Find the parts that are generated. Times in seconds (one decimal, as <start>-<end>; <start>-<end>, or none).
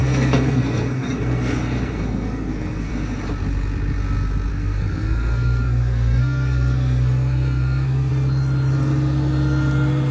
0.0-2.9; 4.5-8.1